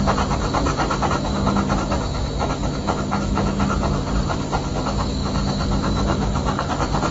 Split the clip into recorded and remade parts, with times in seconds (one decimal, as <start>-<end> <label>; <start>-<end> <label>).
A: 0.0-7.1 recorded